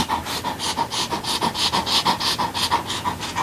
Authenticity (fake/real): real